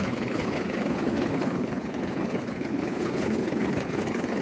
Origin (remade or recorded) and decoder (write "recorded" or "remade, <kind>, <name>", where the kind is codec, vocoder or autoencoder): remade, codec, HILCodec